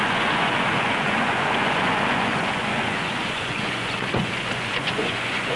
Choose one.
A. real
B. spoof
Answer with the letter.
B